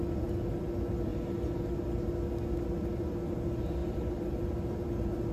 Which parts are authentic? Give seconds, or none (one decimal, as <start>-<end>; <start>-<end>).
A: 0.0-3.8

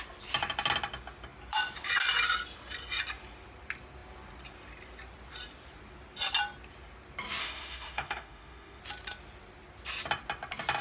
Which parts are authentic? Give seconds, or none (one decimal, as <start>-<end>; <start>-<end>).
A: 0.0-7.4; 8.8-10.8

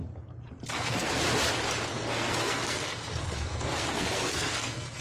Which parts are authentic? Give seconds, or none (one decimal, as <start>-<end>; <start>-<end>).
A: 0.0-0.7; 1.2-1.9

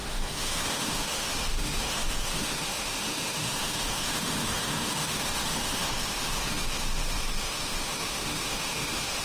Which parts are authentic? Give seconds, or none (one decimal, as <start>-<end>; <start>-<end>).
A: none

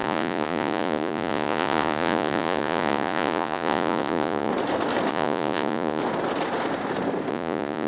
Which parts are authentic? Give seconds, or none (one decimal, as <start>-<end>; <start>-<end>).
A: 4.5-5.1; 6.0-7.3